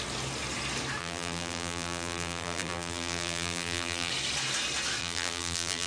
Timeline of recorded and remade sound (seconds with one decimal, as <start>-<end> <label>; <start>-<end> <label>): 0.0-1.0 recorded; 1.0-4.1 remade; 4.1-5.0 recorded; 5.0-5.9 remade